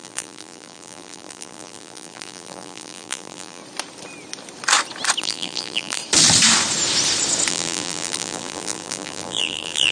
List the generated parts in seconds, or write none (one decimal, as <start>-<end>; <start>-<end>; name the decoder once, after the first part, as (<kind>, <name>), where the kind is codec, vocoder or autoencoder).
0.0-3.6 (vocoder, BigVGAN v2); 5.2-6.0; 7.5-9.9